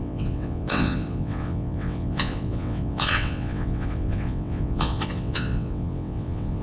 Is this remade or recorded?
remade